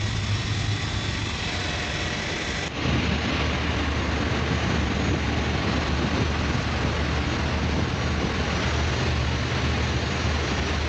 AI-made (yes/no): no